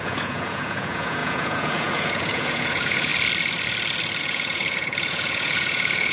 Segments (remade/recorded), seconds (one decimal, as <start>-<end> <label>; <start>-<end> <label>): 0.0-3.1 remade; 3.1-4.2 recorded; 4.2-6.1 remade